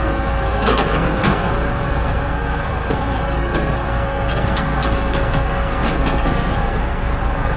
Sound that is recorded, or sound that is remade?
remade